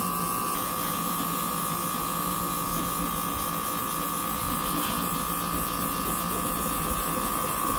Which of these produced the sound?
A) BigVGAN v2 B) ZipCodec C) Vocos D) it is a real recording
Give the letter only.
C